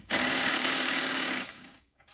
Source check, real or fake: fake